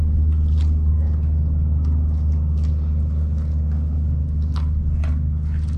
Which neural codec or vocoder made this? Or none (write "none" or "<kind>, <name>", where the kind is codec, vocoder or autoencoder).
none